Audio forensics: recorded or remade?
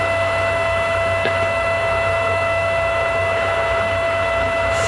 remade